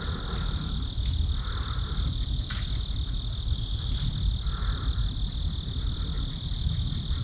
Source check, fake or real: real